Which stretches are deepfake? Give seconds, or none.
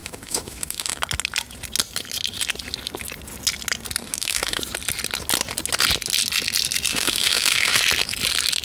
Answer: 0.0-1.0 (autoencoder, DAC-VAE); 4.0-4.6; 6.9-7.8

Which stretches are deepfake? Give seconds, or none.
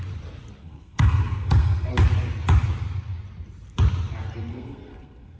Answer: 0.6-1.9 (codec, SNAC); 4.5-5.4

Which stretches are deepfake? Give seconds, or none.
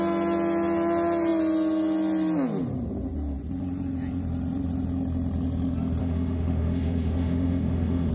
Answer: 6.0-8.1 (autoencoder, DAC-VAE)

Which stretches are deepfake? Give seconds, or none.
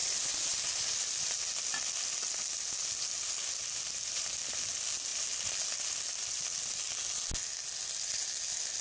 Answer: none